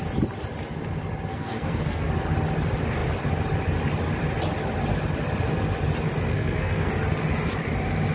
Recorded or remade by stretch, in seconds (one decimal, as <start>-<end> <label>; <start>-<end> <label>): 0.0-1.3 recorded; 1.3-2.1 remade; 2.1-6.3 recorded; 6.3-6.9 remade; 6.9-8.1 recorded